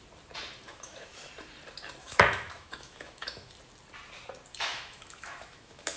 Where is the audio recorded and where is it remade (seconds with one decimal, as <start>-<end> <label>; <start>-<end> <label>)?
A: 0.0-0.7 recorded; 0.7-1.3 remade; 1.3-2.0 recorded; 2.0-3.5 remade; 3.5-4.5 recorded; 4.5-6.0 remade

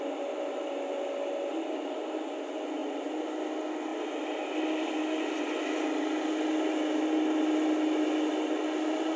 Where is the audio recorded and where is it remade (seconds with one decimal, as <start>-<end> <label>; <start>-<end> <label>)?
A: 0.0-9.2 recorded

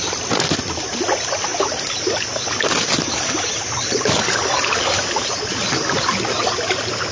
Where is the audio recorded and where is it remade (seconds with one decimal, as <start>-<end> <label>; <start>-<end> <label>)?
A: 0.0-7.1 recorded

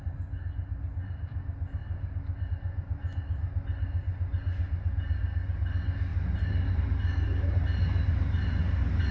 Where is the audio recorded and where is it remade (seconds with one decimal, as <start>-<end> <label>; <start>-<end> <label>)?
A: 0.0-9.1 recorded

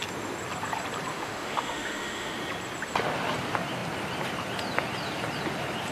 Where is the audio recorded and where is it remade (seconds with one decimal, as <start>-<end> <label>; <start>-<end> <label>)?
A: 0.0-1.1 recorded; 1.1-2.4 remade; 2.4-5.9 recorded

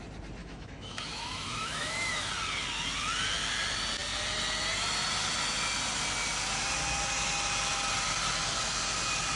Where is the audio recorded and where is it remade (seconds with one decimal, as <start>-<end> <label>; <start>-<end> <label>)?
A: 0.0-0.4 recorded; 0.4-2.3 remade; 2.3-9.4 recorded

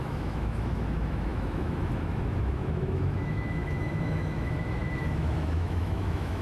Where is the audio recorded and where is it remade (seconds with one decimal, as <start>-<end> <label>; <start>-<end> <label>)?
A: 0.0-6.4 remade